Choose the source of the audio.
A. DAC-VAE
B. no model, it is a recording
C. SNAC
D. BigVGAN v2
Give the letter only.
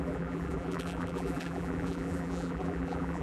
D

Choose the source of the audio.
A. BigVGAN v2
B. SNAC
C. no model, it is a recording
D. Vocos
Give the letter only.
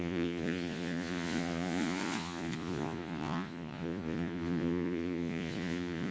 D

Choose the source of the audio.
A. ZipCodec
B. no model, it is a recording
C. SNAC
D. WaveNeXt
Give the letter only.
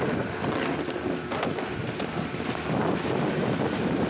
B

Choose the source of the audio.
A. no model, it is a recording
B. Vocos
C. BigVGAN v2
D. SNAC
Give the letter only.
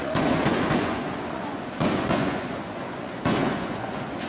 B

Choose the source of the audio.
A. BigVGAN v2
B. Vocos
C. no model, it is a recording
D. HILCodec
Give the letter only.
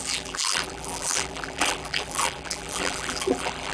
A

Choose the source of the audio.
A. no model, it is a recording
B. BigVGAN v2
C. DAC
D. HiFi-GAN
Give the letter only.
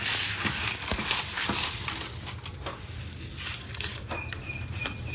A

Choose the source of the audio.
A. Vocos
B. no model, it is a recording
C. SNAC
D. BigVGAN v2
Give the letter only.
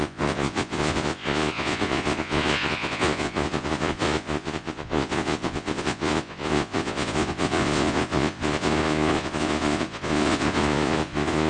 A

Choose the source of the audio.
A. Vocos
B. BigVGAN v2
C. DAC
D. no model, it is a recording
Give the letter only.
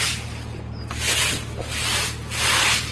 D